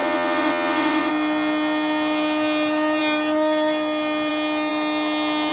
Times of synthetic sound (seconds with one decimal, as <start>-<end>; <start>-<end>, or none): 0.0-1.1